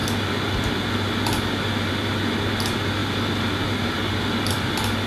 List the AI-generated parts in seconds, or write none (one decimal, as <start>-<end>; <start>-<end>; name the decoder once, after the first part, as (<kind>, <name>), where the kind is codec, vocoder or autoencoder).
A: none

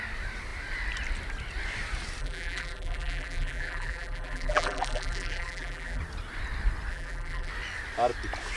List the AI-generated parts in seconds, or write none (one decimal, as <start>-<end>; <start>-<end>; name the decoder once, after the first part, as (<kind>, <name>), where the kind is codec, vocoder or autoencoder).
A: 2.2-6.0 (vocoder, BigVGAN v2); 6.9-7.5

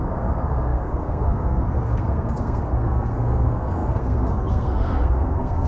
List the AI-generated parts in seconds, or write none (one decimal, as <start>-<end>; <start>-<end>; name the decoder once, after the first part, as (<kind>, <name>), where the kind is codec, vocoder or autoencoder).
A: 0.0-5.7 (codec, SNAC)

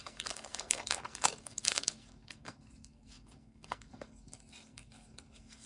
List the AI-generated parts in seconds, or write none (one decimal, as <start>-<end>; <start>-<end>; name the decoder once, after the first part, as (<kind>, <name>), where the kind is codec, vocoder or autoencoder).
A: 0.0-5.7 (codec, SNAC)

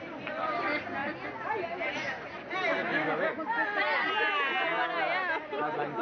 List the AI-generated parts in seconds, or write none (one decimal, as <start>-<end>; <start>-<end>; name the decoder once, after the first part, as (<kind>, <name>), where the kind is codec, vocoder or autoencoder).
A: none

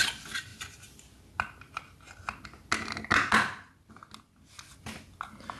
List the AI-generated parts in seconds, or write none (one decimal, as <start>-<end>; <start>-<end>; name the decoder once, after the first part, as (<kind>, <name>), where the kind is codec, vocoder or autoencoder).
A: none

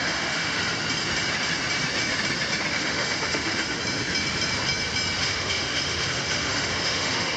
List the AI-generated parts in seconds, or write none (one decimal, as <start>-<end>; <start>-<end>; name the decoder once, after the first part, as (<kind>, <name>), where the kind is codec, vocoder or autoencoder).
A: 0.0-0.6 (autoencoder, DAC-VAE); 2.7-3.8; 5.2-7.4

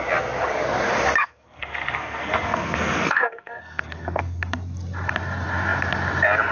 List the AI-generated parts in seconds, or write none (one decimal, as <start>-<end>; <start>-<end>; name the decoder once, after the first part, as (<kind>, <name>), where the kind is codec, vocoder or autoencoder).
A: 1.2-4.4 (codec, SNAC)